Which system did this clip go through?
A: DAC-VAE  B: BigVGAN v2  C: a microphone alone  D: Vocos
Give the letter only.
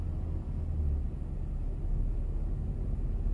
C